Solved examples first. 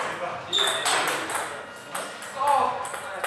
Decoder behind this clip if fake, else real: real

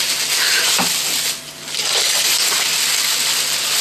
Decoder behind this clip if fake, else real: real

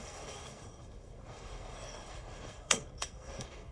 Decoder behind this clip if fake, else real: fake, codec, SNAC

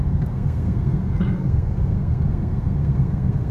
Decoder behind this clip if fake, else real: fake, codec, SNAC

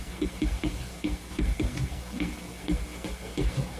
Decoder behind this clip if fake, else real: fake, codec, SNAC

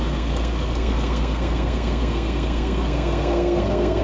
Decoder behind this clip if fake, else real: fake, codec, SNAC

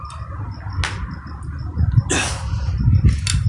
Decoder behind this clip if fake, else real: real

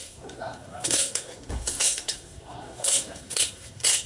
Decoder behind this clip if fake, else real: fake, codec, SNAC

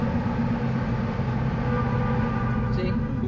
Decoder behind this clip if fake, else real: real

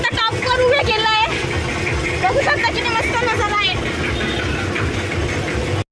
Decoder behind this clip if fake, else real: real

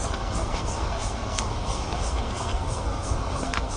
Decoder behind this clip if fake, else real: fake, codec, SNAC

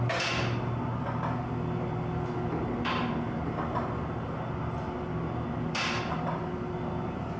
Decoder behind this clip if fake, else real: real